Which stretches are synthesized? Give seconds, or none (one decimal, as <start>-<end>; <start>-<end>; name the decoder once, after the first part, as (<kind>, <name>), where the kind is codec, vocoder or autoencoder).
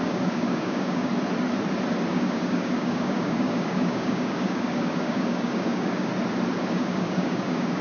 0.0-1.1 (codec, DAC); 2.1-6.1; 6.7-7.8